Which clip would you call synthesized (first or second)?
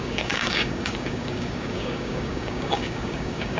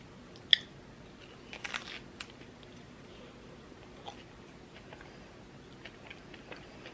first